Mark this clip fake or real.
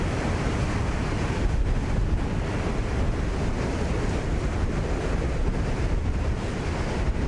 real